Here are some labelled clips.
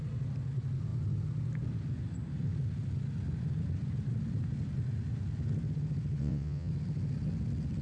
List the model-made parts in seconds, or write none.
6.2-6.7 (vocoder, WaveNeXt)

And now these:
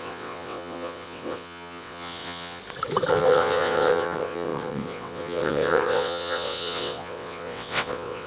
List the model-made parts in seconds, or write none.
0.0-2.6 (vocoder, WaveNeXt); 3.1-8.3

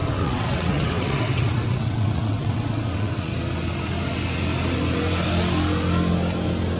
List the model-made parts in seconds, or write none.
0.0-3.3 (vocoder, WaveNeXt)

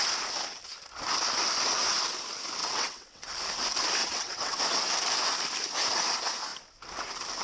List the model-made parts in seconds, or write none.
2.6-3.3 (vocoder, WaveNeXt); 4.0-4.6